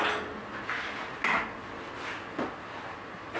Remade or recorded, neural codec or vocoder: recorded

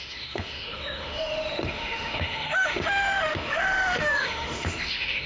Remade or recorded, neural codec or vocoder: remade, autoencoder, DAC-VAE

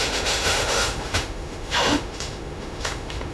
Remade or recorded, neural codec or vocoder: remade, autoencoder, DAC-VAE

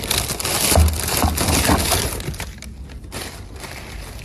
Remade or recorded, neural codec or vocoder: recorded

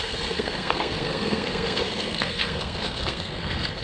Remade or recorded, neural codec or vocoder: remade, codec, SNAC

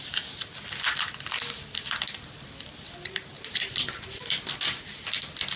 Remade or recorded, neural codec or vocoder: recorded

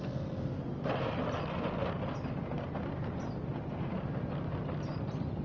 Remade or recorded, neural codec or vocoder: recorded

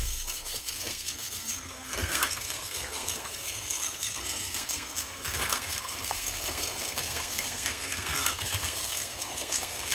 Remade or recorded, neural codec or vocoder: remade, codec, SNAC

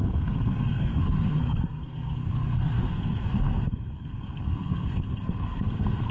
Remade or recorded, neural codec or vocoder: remade, codec, SNAC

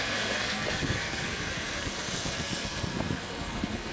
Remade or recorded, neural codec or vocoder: remade, codec, SNAC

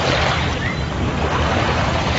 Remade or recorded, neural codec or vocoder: recorded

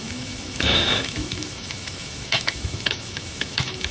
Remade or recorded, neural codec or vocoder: remade, autoencoder, DAC-VAE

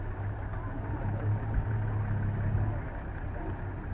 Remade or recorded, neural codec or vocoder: recorded